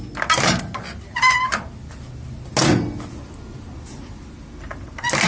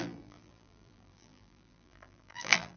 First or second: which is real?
first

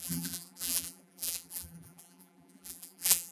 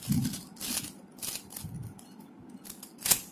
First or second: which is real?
second